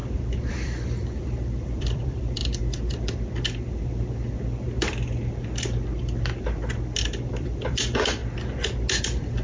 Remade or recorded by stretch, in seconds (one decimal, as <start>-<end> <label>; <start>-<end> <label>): 0.0-2.4 remade; 2.4-7.3 recorded; 7.3-8.2 remade; 8.2-9.0 recorded; 9.0-9.4 remade